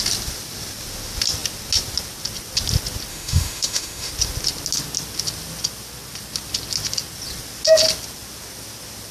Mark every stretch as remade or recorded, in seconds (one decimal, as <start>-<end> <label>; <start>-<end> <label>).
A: 0.0-3.1 recorded; 3.1-4.1 remade; 4.1-9.1 recorded